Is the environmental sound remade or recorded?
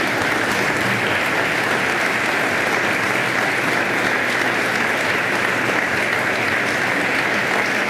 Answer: recorded